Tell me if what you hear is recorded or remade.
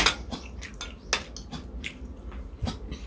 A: recorded